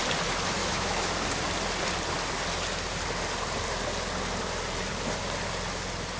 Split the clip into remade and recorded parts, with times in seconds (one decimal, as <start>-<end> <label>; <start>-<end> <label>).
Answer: 0.0-0.6 recorded; 0.6-1.1 remade; 1.1-6.2 recorded